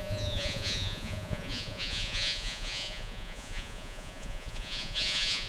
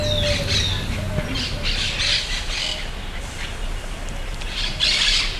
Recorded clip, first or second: second